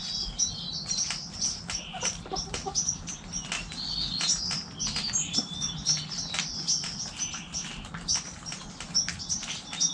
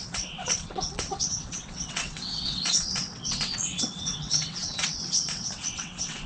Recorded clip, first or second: first